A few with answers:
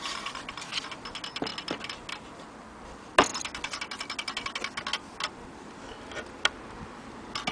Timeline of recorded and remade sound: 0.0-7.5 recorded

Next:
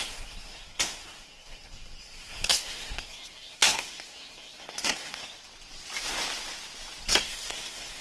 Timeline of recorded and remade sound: 0.0-5.2 remade; 5.2-7.0 recorded; 7.0-8.0 remade